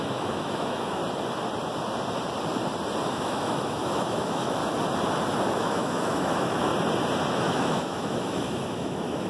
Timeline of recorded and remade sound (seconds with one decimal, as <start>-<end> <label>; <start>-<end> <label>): 0.0-1.0 remade; 1.0-3.1 recorded; 3.1-4.6 remade; 4.6-5.6 recorded; 5.6-6.7 remade; 6.7-7.3 recorded; 7.3-9.3 remade

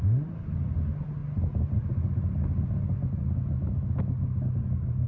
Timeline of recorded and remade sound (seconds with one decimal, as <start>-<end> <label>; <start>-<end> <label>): 0.0-5.1 recorded